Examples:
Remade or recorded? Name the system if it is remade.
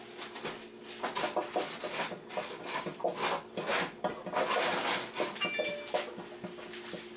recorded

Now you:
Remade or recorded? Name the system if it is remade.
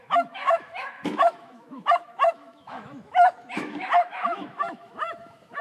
remade, autoencoder, DAC-VAE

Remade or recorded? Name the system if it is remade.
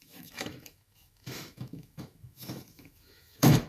remade, autoencoder, DAC-VAE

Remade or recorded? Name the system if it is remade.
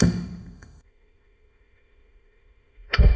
remade, autoencoder, DAC-VAE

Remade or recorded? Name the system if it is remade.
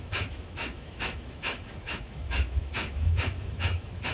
remade, autoencoder, DAC-VAE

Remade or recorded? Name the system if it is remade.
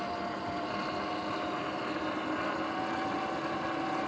recorded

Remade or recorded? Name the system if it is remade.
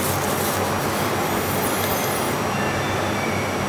recorded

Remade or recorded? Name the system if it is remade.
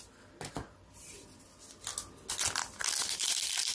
recorded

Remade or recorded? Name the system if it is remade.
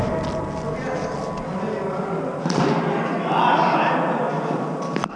recorded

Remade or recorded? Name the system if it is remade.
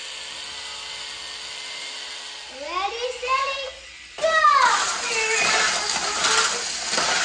recorded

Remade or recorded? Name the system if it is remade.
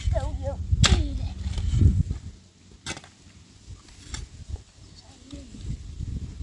recorded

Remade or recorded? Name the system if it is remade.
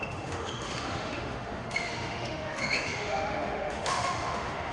remade, autoencoder, DAC-VAE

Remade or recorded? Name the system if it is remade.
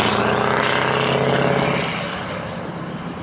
recorded